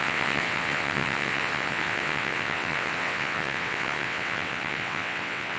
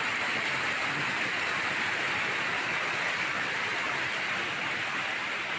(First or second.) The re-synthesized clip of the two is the first